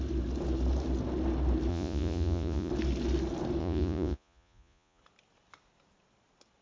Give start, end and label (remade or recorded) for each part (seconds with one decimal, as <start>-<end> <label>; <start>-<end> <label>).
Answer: 0.0-1.7 recorded; 1.7-2.7 remade; 2.7-3.6 recorded; 3.6-5.0 remade; 5.0-6.6 recorded

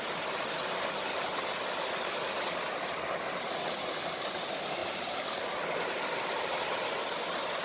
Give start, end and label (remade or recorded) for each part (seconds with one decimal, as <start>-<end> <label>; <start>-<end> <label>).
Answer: 0.0-4.8 recorded; 4.8-6.5 remade; 6.5-7.6 recorded

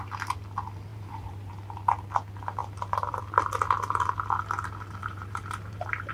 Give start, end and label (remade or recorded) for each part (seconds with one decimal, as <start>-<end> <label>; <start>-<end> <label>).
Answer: 0.0-0.9 recorded; 0.9-1.5 remade; 1.5-2.6 recorded; 2.6-3.2 remade; 3.2-5.0 recorded; 5.0-6.1 remade

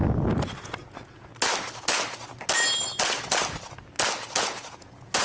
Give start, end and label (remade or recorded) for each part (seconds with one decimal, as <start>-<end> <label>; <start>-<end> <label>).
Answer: 0.0-0.6 recorded; 0.6-1.3 remade; 1.3-4.4 recorded; 4.4-5.2 remade